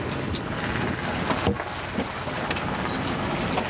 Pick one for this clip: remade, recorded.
recorded